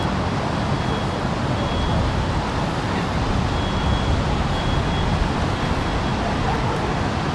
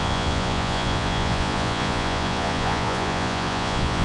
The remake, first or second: second